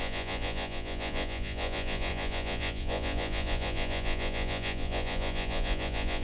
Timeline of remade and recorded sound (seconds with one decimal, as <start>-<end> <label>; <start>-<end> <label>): 0.0-6.2 remade